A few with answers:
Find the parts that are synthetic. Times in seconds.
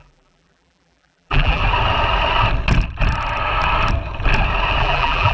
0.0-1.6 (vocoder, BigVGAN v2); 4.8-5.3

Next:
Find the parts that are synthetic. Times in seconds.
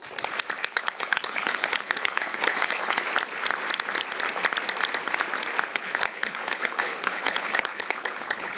0.6-3.0 (codec, HILCodec); 5.7-8.6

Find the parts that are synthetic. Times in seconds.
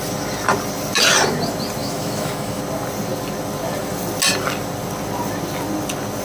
1.8-2.6 (autoencoder, DAC-VAE)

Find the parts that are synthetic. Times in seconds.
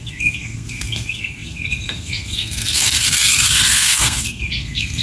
0.0-5.0 (codec, SNAC)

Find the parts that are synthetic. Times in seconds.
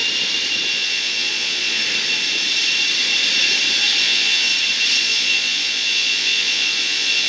0.7-1.8 (vocoder, Vocos); 4.0-4.5; 5.0-7.3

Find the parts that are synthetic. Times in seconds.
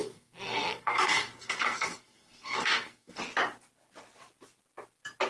0.0-3.2 (codec, SNAC)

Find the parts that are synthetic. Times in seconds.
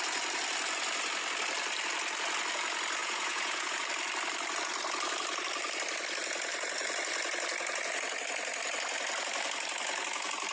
3.0-3.8 (vocoder, Vocos)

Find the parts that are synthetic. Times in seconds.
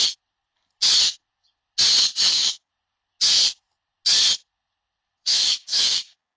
2.3-2.7 (codec, DAC); 5.2-6.4